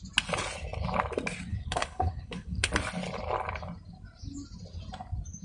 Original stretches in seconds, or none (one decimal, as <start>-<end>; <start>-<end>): 0.0-1.5; 2.7-5.4